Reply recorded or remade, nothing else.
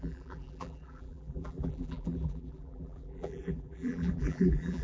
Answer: remade